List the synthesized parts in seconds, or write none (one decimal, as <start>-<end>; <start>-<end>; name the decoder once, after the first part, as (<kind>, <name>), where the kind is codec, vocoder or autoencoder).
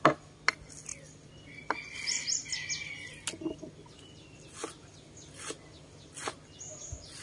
none